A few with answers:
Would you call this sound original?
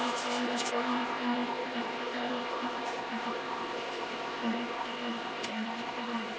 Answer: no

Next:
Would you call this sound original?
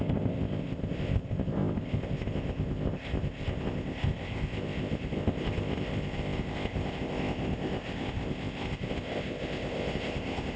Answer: no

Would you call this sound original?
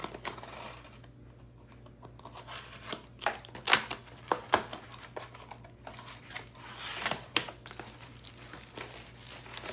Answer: yes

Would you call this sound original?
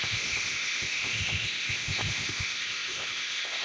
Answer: no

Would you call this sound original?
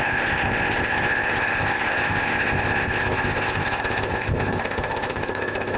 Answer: no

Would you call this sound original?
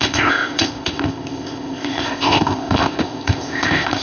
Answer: no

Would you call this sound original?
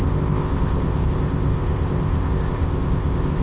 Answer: no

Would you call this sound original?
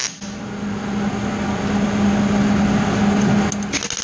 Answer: yes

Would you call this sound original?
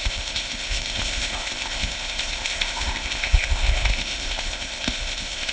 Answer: no